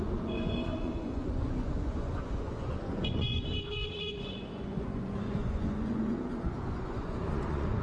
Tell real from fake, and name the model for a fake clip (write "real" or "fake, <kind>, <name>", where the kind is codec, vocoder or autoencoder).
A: fake, vocoder, Vocos